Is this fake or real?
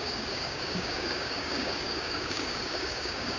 fake